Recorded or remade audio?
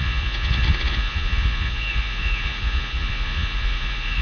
remade